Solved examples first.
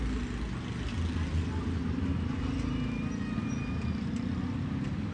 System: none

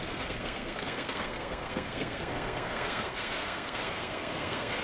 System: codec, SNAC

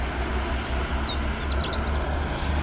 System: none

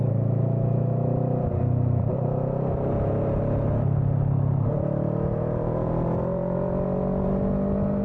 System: none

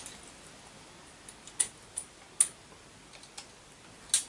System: none